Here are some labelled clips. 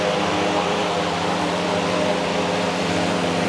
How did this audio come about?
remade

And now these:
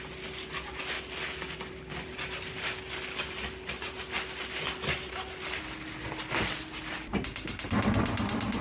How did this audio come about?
recorded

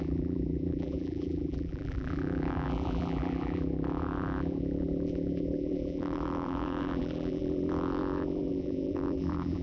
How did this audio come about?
remade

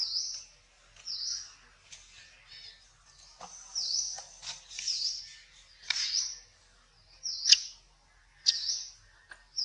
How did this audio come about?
recorded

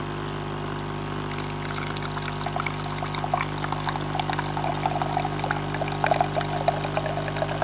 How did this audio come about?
recorded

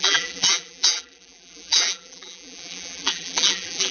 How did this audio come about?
remade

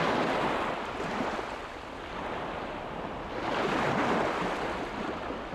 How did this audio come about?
recorded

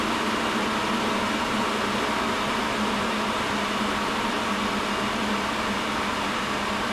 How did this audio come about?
recorded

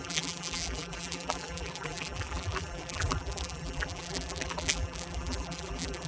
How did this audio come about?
remade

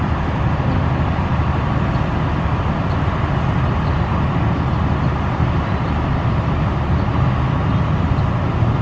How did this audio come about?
recorded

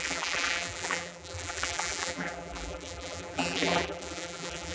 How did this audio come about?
remade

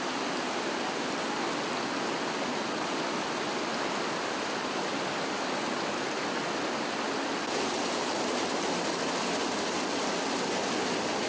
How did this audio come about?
recorded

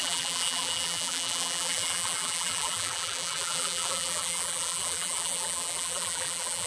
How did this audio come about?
remade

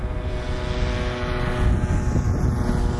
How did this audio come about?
recorded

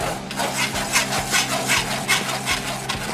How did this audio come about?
recorded